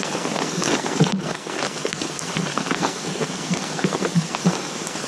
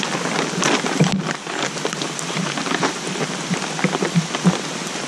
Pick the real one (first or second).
second